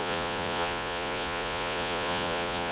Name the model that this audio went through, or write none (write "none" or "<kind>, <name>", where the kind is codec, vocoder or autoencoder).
vocoder, Vocos